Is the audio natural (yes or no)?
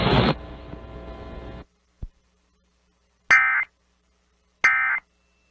yes